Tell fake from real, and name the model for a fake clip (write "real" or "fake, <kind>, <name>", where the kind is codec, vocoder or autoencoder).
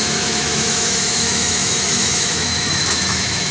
fake, autoencoder, DAC-VAE